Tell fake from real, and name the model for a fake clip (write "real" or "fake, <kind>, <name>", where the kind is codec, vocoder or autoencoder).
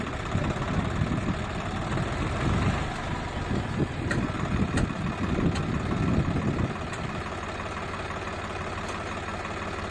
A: real